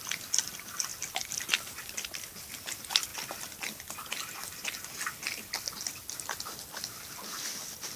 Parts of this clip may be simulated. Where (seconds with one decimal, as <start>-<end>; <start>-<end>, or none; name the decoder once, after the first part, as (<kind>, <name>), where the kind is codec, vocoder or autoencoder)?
none